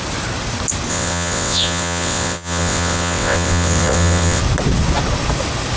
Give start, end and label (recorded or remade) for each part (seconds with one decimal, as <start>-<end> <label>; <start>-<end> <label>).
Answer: 0.0-0.9 recorded; 0.9-4.4 remade; 4.4-5.8 recorded